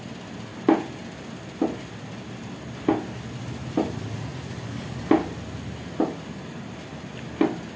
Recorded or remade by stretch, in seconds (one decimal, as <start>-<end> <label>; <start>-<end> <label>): 0.0-7.8 recorded